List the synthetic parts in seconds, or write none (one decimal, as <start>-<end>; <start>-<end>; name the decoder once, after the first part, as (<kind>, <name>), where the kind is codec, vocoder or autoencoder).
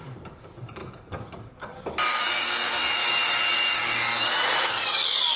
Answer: 0.0-4.1 (codec, DAC); 4.7-5.4